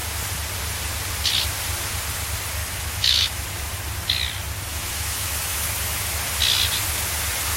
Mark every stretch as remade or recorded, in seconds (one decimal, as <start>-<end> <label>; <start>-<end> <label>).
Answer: 0.0-2.6 recorded; 2.6-3.4 remade; 3.4-4.7 recorded; 4.7-6.0 remade; 6.0-7.6 recorded